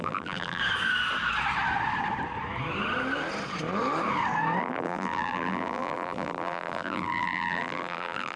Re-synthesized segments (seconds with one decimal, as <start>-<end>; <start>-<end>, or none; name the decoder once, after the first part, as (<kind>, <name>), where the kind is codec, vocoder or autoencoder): 0.0-0.6 (vocoder, BigVGAN v2); 4.6-8.4